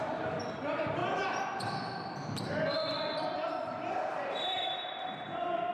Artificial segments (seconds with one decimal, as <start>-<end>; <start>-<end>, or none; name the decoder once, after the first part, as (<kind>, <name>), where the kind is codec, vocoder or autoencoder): none